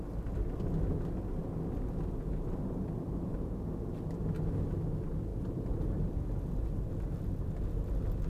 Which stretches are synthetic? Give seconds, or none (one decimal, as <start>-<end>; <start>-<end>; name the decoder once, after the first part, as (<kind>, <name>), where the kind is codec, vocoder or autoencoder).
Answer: 5.3-6.9 (vocoder, BigVGAN v2)